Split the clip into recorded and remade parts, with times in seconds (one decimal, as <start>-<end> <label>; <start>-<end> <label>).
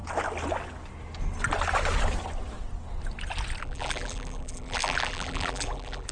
0.0-3.6 recorded; 3.6-6.1 remade